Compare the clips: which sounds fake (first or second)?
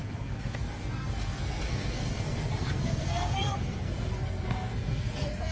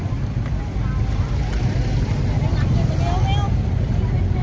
first